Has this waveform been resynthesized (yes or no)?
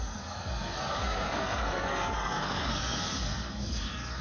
yes